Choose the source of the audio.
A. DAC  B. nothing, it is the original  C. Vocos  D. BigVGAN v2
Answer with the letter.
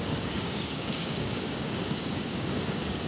A